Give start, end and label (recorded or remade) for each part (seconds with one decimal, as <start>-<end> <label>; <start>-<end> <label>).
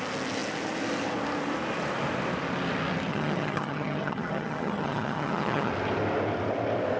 0.0-3.1 recorded; 3.1-5.7 remade; 5.7-7.0 recorded